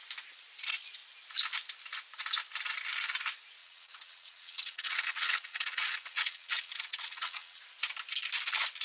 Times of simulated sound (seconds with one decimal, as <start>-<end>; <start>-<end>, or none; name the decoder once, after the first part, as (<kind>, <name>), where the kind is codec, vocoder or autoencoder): 3.6-7.6 (vocoder, WaveNeXt)